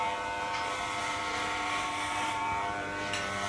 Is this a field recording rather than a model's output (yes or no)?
no